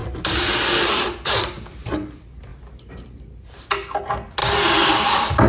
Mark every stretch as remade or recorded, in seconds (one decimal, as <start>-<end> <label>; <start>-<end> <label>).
0.0-2.5 recorded; 2.5-4.0 remade; 4.0-4.4 recorded; 4.4-5.5 remade